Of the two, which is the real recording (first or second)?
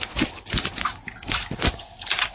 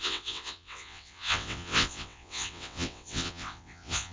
first